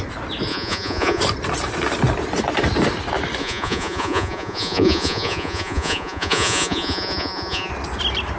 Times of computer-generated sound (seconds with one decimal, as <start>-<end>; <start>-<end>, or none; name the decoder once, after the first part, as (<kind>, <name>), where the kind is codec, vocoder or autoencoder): 0.5-1.2 (vocoder, Vocos); 3.4-7.7